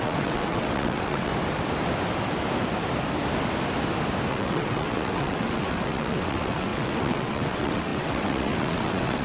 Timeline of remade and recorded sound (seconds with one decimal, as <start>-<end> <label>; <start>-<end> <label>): 0.0-1.3 remade; 1.3-4.3 recorded; 4.3-9.2 remade